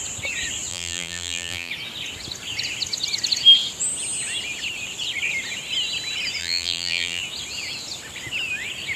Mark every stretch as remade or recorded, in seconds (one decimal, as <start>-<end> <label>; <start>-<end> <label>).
0.0-0.7 recorded; 0.7-1.7 remade; 1.7-6.4 recorded; 6.4-7.2 remade; 7.2-9.0 recorded